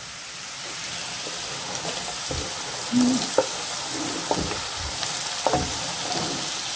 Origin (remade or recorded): recorded